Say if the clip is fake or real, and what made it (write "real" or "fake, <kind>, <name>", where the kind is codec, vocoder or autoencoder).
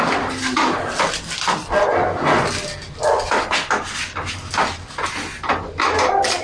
real